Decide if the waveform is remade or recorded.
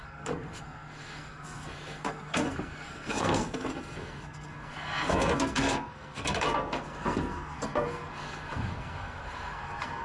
remade